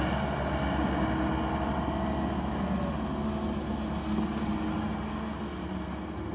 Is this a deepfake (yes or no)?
no